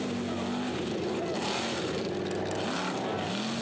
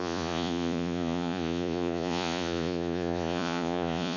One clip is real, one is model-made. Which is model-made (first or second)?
second